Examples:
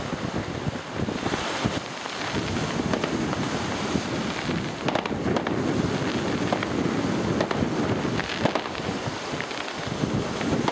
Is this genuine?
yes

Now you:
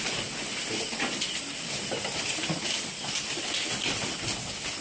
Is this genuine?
yes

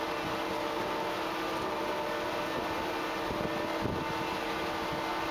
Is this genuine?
yes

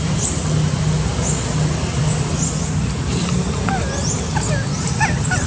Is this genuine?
yes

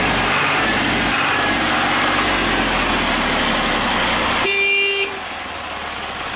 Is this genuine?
yes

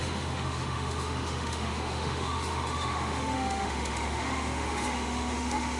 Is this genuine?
no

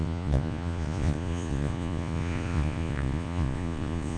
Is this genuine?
no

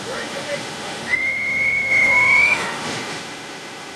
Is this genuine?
no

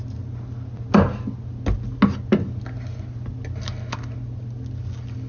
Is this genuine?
yes